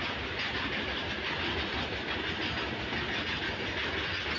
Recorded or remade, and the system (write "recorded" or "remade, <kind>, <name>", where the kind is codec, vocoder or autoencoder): recorded